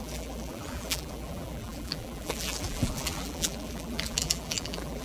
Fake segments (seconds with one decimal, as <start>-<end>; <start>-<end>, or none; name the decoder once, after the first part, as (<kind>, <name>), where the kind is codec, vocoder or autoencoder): 0.0-5.0 (vocoder, BigVGAN v2)